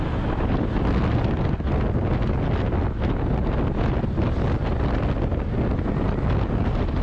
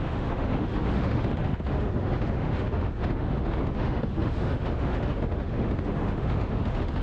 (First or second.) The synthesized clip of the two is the second